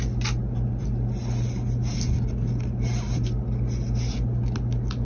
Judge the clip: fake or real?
real